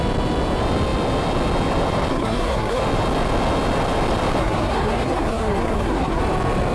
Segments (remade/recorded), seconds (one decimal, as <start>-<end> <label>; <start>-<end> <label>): 0.0-2.1 recorded; 2.1-2.8 remade; 2.8-4.4 recorded; 4.4-6.2 remade; 6.2-6.7 recorded